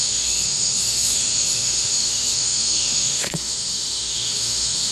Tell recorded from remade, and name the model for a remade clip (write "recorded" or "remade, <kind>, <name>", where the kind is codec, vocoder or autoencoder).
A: remade, autoencoder, DAC-VAE